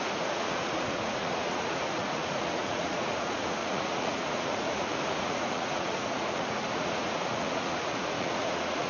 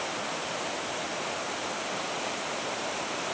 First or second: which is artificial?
first